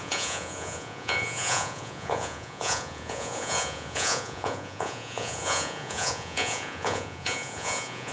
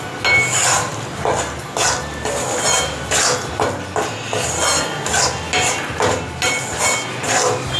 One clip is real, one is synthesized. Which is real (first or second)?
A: second